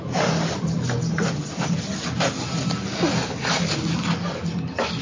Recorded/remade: recorded